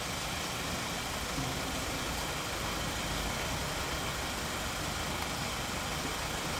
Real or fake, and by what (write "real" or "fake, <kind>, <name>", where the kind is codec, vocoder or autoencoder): real